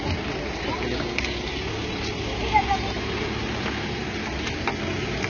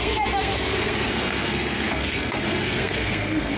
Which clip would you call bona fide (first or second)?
first